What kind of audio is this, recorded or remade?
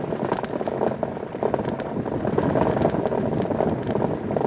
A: recorded